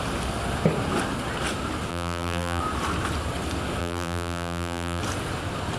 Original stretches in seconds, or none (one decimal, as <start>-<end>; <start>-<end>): 0.0-1.9; 2.6-3.8; 5.0-5.8

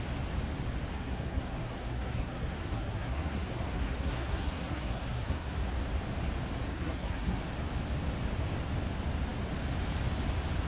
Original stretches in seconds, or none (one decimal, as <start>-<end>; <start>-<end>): 0.0-0.9; 5.7-6.7; 7.4-10.7

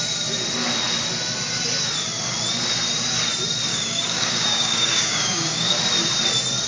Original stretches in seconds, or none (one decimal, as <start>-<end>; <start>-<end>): 0.0-3.7; 5.8-6.7

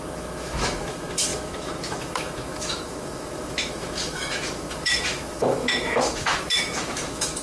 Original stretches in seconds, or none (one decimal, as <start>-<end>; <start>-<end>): none

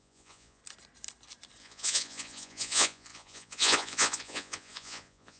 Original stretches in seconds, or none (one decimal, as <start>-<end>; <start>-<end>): 0.6-1.6